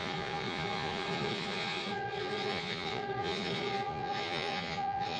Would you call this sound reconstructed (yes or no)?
yes